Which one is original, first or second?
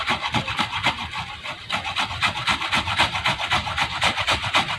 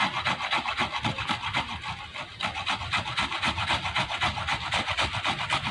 second